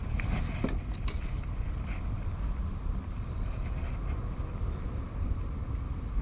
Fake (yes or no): no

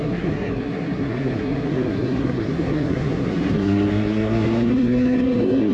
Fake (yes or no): yes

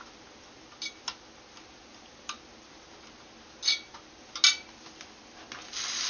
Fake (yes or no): no